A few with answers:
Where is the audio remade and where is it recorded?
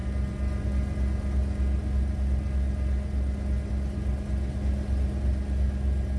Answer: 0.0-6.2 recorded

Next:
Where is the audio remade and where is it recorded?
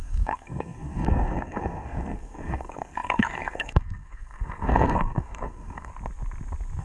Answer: 0.0-5.9 remade; 5.9-6.8 recorded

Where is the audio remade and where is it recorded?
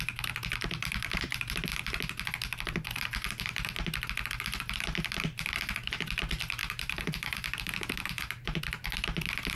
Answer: 0.0-0.8 recorded; 0.8-1.6 remade; 1.6-6.6 recorded; 6.6-8.6 remade; 8.6-9.6 recorded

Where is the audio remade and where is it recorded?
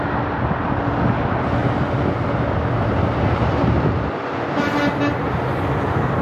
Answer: 0.0-6.2 recorded